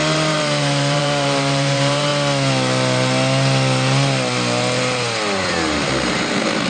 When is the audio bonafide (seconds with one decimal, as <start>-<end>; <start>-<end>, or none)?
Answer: 2.1-5.9